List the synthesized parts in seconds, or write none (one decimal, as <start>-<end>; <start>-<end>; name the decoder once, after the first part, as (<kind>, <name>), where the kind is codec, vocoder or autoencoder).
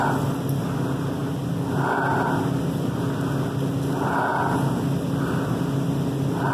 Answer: none